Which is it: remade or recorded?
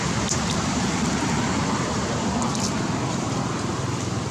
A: remade